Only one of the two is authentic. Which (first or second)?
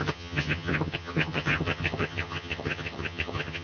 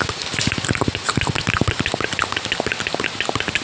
second